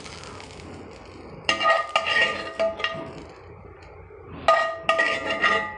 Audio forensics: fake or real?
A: real